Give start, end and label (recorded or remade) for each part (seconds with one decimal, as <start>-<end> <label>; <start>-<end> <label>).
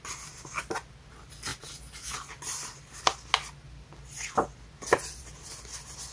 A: 0.0-6.1 recorded